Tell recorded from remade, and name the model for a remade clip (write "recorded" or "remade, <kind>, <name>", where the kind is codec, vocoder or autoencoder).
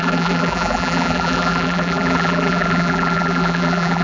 remade, vocoder, BigVGAN v2